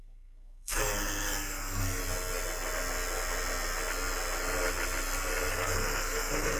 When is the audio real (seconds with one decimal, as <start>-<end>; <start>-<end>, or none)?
2.0-5.5